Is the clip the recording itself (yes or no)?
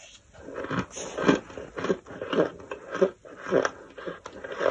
yes